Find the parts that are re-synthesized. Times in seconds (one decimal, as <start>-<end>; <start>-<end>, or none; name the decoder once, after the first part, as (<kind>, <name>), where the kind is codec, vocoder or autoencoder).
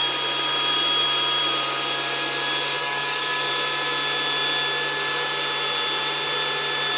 2.8-3.5 (codec, DAC)